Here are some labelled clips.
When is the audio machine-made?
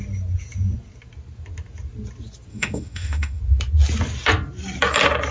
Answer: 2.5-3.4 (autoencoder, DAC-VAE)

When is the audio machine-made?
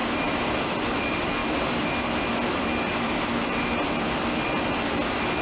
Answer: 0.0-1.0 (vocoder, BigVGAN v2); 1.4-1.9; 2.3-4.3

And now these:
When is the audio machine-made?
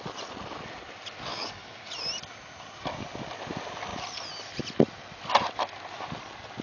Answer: 1.3-1.9 (codec, DAC)